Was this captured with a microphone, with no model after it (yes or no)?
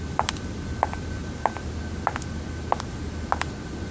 yes